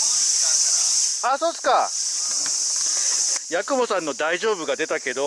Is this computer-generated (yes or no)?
no